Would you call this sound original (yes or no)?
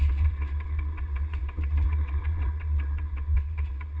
no